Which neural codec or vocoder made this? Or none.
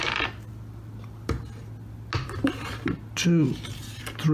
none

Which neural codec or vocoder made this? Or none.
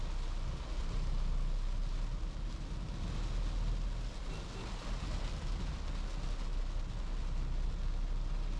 none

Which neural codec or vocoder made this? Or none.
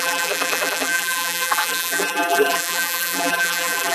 vocoder, BigVGAN v2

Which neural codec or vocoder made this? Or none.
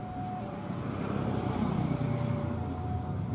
none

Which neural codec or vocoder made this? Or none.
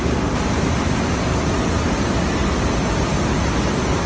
none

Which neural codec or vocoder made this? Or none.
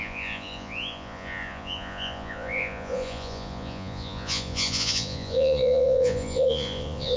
vocoder, Vocos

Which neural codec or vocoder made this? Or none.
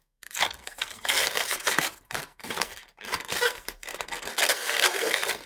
codec, SNAC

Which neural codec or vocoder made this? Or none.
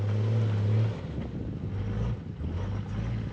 none